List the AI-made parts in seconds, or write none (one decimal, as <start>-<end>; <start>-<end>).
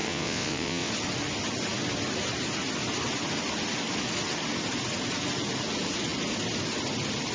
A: 0.0-0.9